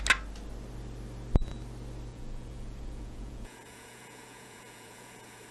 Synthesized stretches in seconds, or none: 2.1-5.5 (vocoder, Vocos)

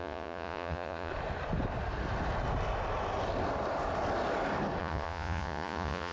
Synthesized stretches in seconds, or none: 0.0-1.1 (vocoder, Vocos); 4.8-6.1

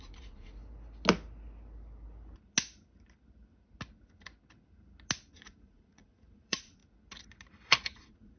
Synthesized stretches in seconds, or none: 0.0-0.6 (vocoder, Vocos); 5.3-6.8; 7.8-8.4